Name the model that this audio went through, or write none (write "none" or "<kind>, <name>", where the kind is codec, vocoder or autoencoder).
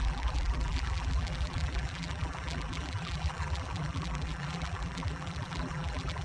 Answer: vocoder, BigVGAN v2